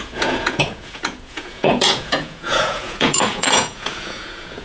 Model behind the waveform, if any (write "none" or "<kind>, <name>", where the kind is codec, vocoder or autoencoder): vocoder, Vocos